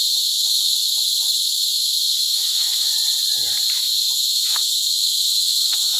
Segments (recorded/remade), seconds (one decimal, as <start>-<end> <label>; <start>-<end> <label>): 0.0-2.9 remade; 2.9-4.3 recorded; 4.3-6.0 remade